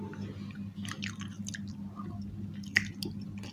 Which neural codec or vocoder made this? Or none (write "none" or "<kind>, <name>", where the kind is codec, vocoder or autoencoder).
none